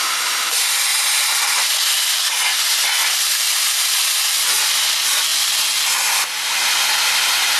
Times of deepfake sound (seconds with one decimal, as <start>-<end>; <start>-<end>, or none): none